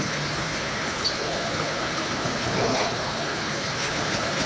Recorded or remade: remade